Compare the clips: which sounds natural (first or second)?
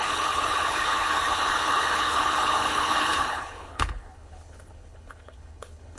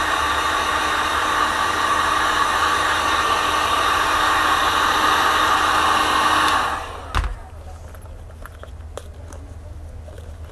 second